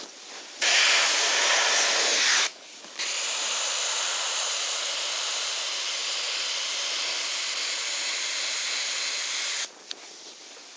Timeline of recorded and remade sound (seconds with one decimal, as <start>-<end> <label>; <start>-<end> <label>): 0.0-6.0 recorded; 6.0-7.7 remade; 7.7-10.8 recorded